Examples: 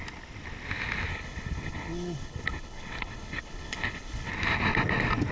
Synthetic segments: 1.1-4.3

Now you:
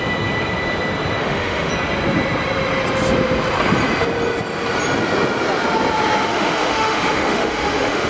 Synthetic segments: 1.2-1.7; 6.3-8.1